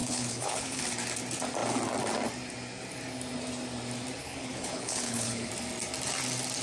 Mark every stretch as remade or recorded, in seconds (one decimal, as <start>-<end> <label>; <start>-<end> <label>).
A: 0.0-0.8 remade; 0.8-4.2 recorded; 4.2-5.5 remade; 5.5-6.6 recorded